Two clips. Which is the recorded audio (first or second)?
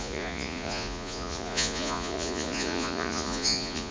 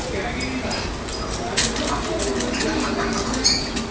second